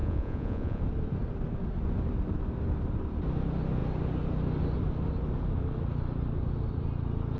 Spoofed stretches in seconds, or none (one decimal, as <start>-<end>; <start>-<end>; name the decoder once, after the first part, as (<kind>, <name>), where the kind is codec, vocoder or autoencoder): 0.0-0.8 (vocoder, Vocos)